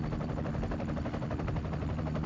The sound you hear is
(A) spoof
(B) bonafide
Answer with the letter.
B